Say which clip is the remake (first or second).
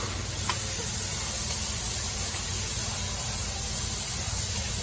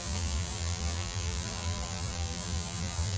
second